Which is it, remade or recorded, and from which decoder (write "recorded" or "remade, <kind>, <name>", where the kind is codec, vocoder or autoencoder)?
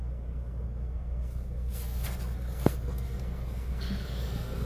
remade, codec, SNAC